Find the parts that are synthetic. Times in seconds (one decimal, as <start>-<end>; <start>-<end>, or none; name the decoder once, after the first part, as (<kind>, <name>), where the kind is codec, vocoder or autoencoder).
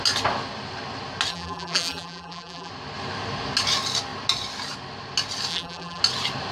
1.3-2.7 (vocoder, BigVGAN v2); 5.5-6.0